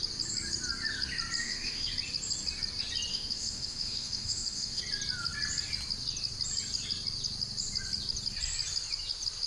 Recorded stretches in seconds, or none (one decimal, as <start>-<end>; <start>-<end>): 0.0-1.4; 1.9-3.1; 4.8-9.5